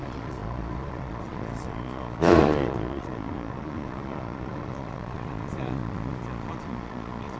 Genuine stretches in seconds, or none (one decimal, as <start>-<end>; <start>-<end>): none